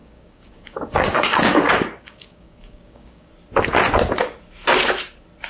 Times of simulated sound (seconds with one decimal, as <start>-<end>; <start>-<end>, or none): 0.0-3.3